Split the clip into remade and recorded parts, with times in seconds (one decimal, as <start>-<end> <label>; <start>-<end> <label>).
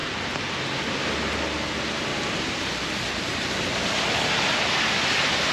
0.0-2.1 recorded; 2.1-5.5 remade